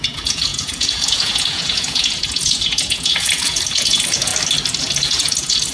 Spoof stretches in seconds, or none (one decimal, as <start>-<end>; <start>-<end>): 0.0-4.3; 4.8-5.7